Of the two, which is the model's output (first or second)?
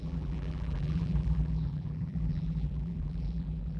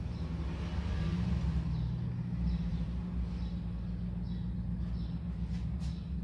first